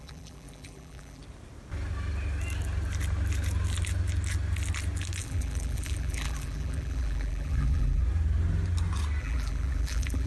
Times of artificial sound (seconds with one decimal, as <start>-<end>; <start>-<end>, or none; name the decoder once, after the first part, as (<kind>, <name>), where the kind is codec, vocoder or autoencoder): 0.0-1.2 (vocoder, BigVGAN v2); 5.2-8.0; 9.2-10.3